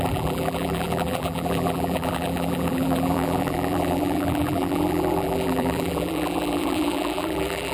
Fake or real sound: fake